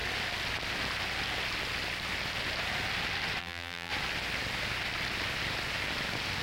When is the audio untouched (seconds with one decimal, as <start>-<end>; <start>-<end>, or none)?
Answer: 0.0-3.4; 3.9-6.4

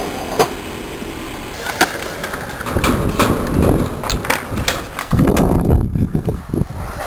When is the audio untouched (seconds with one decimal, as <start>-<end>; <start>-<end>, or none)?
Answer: 0.0-5.0; 6.4-7.1

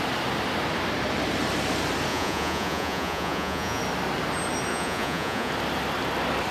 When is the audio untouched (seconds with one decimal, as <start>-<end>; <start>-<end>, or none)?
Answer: 0.0-2.1; 3.8-4.7; 5.5-6.5